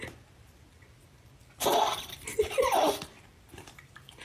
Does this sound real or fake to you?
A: fake